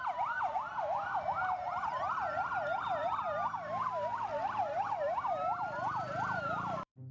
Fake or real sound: real